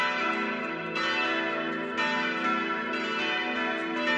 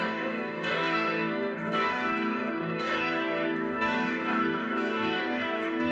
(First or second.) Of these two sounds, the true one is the first